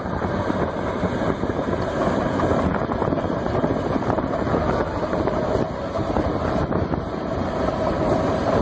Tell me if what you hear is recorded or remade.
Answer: remade